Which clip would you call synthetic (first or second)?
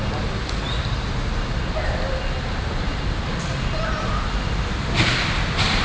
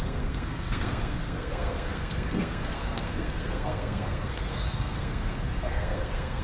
second